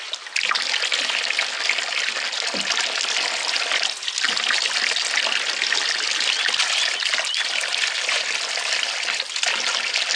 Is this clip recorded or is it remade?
recorded